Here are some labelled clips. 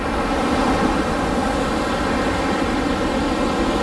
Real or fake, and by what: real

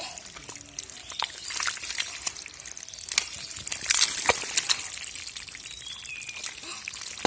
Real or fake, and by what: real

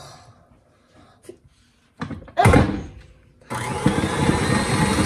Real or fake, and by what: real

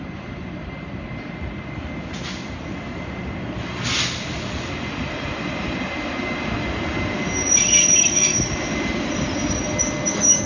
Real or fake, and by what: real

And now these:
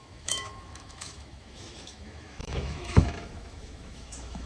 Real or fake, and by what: fake, autoencoder, DAC-VAE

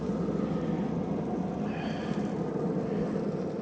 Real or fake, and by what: real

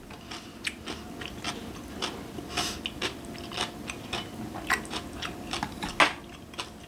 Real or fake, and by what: real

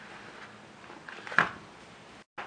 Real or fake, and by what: real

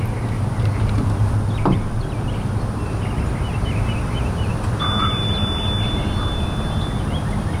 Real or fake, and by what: real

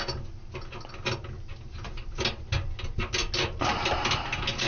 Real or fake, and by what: real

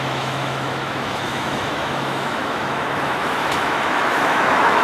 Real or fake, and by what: fake, autoencoder, DAC-VAE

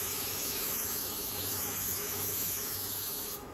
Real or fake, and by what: fake, autoencoder, DAC-VAE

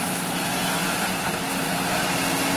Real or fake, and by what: real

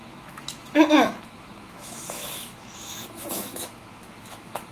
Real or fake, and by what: fake, autoencoder, DAC-VAE